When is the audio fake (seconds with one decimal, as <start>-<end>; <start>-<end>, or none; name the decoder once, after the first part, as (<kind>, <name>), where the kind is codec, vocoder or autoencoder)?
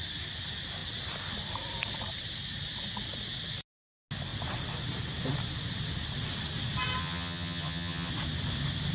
7.0-8.1 (vocoder, HiFi-GAN)